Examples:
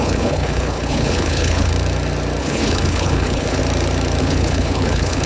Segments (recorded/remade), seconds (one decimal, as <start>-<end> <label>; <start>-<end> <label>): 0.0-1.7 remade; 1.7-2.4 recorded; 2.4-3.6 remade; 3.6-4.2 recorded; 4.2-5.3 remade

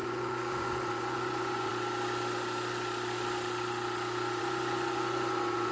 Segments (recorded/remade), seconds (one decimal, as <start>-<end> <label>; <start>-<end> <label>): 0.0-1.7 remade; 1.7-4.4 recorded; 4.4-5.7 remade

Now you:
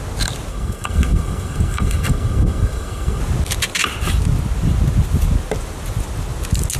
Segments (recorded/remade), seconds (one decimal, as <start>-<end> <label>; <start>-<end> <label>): 0.0-0.5 recorded; 0.5-3.2 remade; 3.2-6.8 recorded

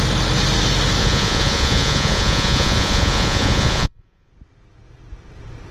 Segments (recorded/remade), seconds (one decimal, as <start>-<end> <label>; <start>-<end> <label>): 0.0-1.0 recorded; 1.0-4.3 remade; 4.3-5.7 recorded

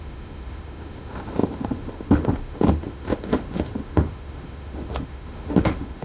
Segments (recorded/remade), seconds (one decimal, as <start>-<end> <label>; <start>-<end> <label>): 0.0-6.0 remade

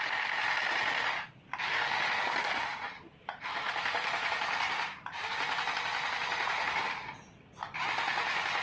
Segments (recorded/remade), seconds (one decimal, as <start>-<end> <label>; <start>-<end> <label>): 0.0-2.7 recorded; 2.7-5.3 remade; 5.3-6.3 recorded; 6.3-6.9 remade; 6.9-8.6 recorded